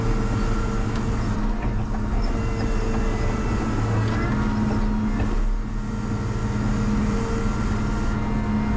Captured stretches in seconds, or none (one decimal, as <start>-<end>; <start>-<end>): 0.0-8.8

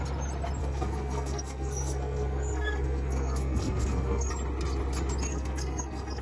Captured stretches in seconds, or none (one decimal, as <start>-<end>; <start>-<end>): 0.0-0.6; 4.3-5.3

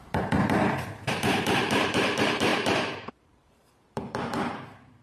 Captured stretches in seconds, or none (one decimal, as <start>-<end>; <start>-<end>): none

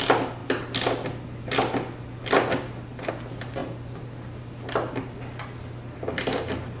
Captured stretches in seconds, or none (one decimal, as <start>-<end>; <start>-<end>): 0.0-6.8